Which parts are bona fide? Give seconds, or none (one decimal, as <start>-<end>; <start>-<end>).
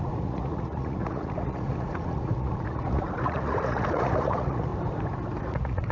4.7-5.4